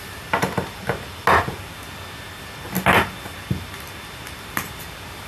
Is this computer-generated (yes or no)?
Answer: no